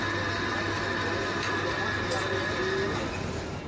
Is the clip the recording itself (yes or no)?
yes